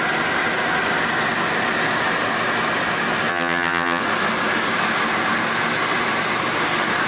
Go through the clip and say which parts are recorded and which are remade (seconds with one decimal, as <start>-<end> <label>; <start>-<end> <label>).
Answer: 0.0-3.3 recorded; 3.3-4.0 remade; 4.0-7.1 recorded